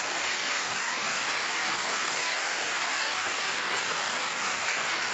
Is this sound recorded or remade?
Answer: remade